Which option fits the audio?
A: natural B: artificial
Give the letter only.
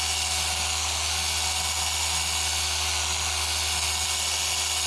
A